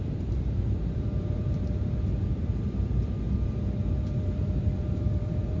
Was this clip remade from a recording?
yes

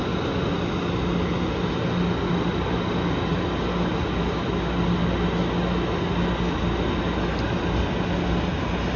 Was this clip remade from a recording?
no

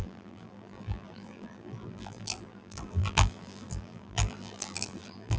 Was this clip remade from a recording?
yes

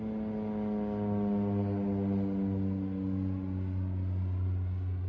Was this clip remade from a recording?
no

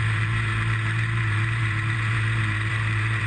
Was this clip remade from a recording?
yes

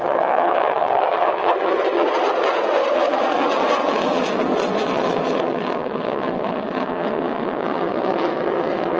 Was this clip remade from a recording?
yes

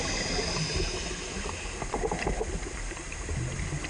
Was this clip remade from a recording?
no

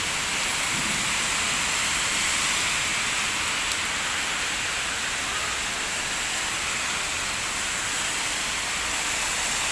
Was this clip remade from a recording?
no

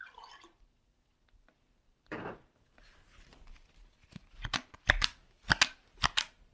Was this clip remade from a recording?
no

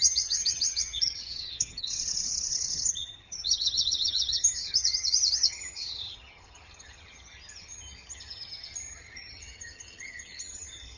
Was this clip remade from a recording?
yes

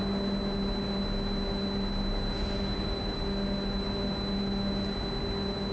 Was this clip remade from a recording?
no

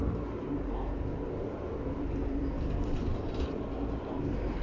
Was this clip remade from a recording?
no